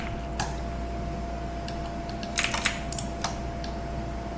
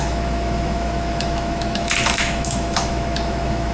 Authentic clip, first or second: first